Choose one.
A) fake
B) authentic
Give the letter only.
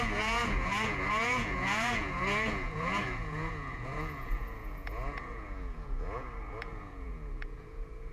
A